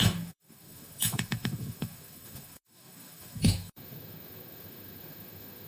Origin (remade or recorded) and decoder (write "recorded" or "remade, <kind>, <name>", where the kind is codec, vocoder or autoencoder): remade, autoencoder, DAC-VAE